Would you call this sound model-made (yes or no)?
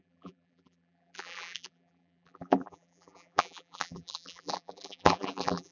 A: yes